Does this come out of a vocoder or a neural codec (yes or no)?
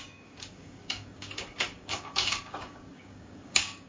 yes